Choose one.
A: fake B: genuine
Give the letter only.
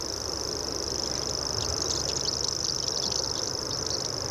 B